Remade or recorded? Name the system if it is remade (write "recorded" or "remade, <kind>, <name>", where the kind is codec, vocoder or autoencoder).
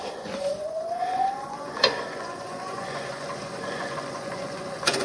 remade, vocoder, Vocos